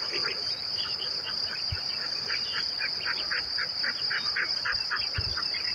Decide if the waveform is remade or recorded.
recorded